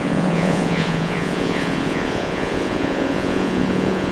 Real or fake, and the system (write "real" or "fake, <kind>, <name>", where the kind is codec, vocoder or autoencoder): fake, vocoder, Vocos